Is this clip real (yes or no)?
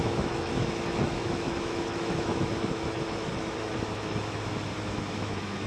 no